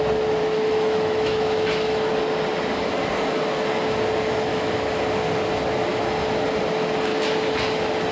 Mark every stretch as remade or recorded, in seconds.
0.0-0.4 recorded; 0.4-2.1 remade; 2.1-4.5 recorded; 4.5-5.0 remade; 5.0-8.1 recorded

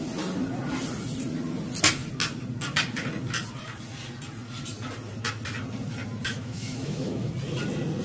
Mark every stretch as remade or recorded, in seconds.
0.0-6.3 recorded; 6.3-7.3 remade; 7.3-8.0 recorded